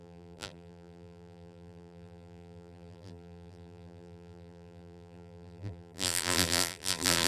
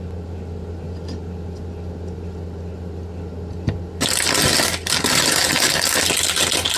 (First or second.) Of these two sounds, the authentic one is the second